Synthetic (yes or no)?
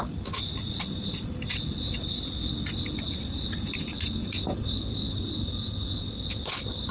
no